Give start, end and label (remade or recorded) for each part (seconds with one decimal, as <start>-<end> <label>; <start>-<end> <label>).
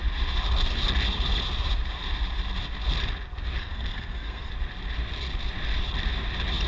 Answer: 0.0-3.6 recorded; 3.6-4.5 remade; 4.5-6.7 recorded